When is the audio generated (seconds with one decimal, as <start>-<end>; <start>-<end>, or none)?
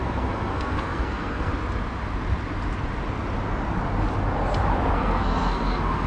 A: 0.0-1.5; 4.9-6.1